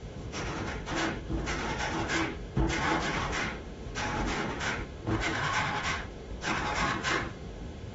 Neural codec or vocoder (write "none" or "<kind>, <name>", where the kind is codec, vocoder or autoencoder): autoencoder, DAC-VAE